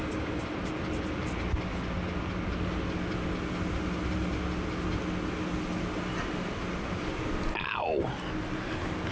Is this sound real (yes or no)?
yes